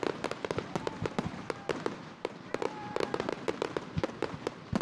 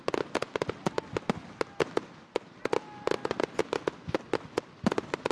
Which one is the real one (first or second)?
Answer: second